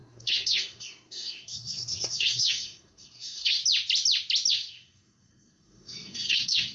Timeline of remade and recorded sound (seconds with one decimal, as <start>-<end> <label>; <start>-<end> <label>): 0.0-3.6 remade; 3.6-4.5 recorded; 4.5-6.7 remade